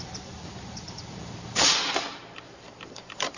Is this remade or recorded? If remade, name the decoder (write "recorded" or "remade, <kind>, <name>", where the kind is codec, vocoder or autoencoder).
remade, vocoder, BigVGAN v2